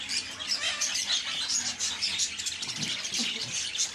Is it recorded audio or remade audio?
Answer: recorded